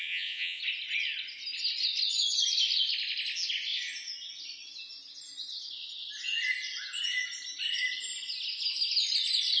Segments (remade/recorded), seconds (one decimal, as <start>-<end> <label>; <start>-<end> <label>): 0.0-0.6 remade; 0.6-9.6 recorded